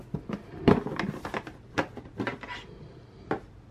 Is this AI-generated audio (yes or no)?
no